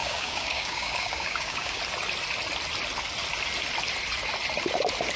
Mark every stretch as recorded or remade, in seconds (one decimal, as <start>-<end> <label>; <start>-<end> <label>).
0.0-1.8 remade; 1.8-5.2 recorded